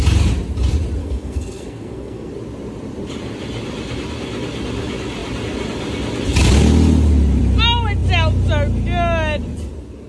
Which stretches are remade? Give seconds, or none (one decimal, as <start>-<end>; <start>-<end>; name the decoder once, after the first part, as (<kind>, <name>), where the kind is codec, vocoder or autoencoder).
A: 1.0-2.3 (codec, SNAC)